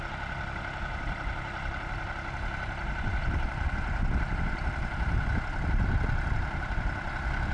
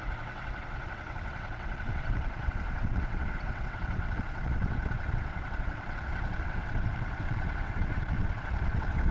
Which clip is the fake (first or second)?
second